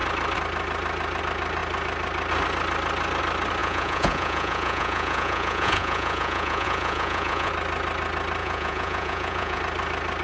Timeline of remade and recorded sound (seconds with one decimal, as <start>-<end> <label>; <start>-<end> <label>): 0.0-3.6 recorded; 3.6-7.5 remade; 7.5-8.4 recorded; 8.4-9.6 remade; 9.6-10.2 recorded